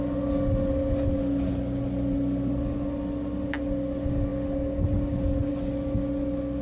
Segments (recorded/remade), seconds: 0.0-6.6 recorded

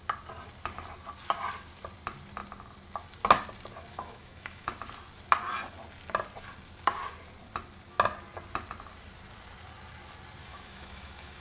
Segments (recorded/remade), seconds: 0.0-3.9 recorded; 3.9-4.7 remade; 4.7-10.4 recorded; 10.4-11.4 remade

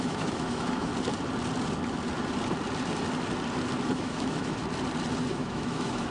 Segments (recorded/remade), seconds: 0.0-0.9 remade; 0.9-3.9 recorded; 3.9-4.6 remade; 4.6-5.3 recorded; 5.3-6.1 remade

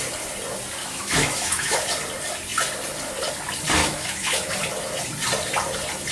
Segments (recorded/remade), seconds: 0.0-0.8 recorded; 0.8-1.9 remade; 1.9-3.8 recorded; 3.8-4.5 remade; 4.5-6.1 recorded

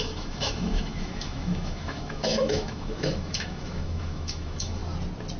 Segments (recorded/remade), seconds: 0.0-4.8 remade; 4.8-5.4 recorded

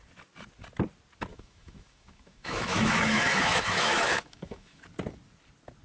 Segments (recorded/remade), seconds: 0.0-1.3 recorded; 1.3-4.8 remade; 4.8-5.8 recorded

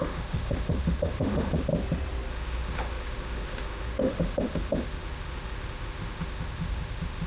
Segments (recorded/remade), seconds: 0.0-1.7 remade; 1.7-2.3 recorded; 2.3-7.3 remade